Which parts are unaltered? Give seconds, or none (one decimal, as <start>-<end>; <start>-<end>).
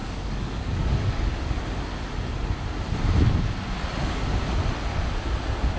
1.6-5.8